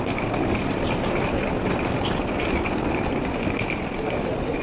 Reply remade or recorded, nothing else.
recorded